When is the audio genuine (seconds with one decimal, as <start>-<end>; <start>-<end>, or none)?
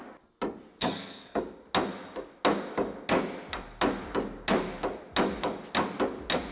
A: 0.0-0.8; 1.4-6.5